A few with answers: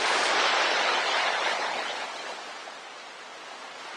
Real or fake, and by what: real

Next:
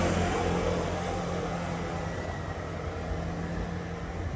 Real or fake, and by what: real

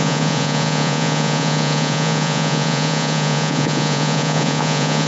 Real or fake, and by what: fake, vocoder, Vocos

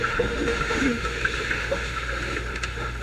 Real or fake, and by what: fake, autoencoder, DAC-VAE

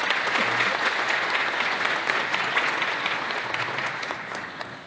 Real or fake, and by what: fake, vocoder, Vocos